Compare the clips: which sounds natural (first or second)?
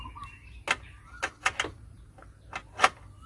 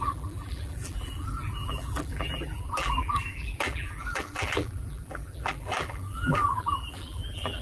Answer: first